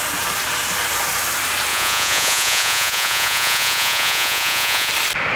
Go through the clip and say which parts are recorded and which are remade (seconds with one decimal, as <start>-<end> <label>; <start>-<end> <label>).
0.0-1.7 recorded; 1.7-4.9 remade; 4.9-5.4 recorded